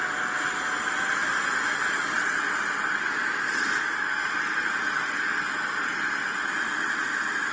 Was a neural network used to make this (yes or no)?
no